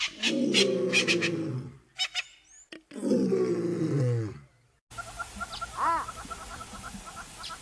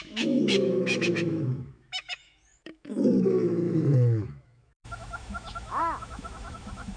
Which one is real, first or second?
first